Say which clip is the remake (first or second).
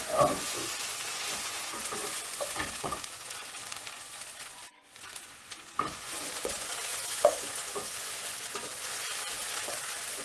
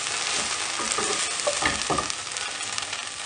first